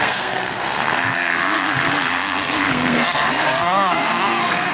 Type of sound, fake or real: fake